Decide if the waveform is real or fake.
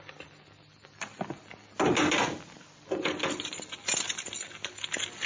real